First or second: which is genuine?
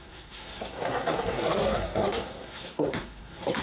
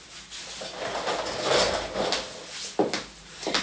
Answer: second